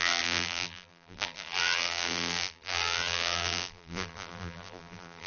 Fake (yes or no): yes